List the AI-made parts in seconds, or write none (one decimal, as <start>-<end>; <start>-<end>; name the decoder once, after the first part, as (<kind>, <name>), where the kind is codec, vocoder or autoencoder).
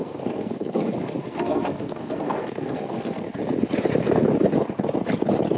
0.0-3.4 (codec, SNAC)